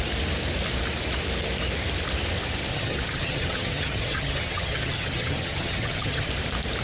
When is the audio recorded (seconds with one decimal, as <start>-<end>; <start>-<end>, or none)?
0.0-2.7; 6.3-6.8